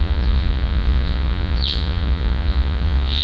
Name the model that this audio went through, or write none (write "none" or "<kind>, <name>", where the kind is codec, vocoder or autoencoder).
vocoder, Vocos